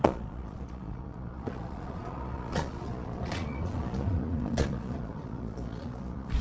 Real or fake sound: fake